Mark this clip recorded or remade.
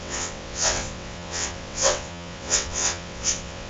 remade